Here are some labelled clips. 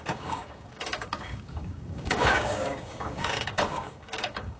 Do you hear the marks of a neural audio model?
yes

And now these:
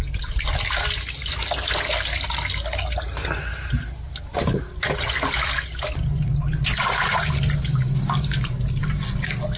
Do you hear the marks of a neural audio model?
no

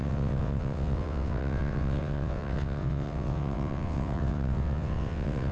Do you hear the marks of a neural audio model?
yes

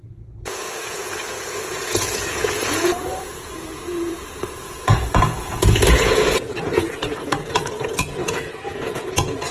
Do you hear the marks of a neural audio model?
yes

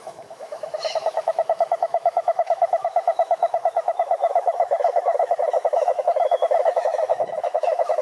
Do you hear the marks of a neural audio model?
yes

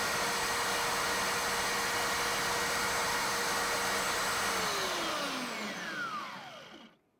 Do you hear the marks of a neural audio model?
no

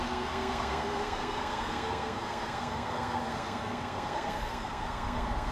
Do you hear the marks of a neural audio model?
yes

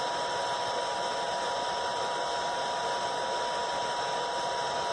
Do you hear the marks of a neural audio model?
no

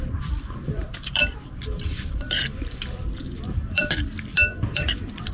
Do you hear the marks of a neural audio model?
yes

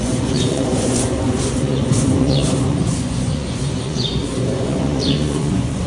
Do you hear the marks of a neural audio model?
yes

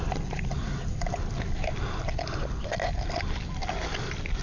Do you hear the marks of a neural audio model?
no